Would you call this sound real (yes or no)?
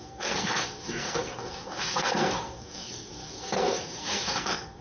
no